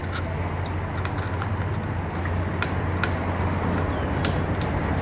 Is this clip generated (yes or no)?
no